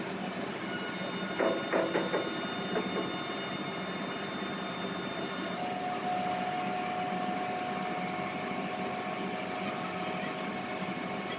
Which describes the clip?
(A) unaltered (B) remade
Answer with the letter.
A